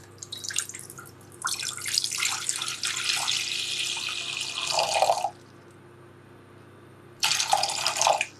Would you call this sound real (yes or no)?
yes